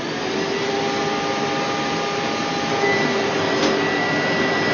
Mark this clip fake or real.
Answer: real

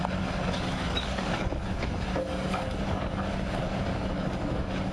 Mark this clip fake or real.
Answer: fake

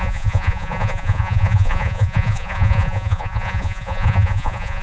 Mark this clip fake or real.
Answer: fake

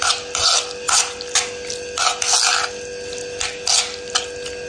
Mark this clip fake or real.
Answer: real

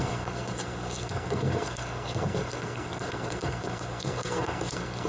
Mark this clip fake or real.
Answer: fake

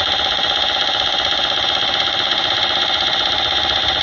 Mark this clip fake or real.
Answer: fake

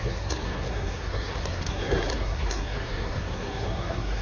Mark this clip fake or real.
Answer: fake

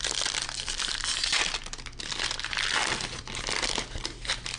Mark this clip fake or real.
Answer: real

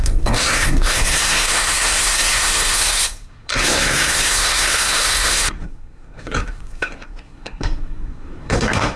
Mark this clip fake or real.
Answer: fake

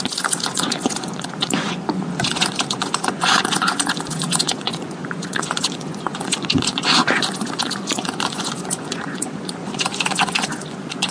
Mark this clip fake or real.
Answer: fake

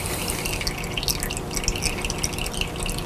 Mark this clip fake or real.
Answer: real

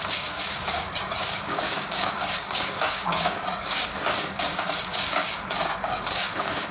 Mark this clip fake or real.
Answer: fake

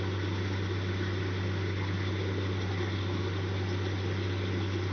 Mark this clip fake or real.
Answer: real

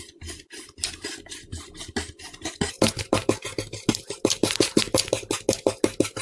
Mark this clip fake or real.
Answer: real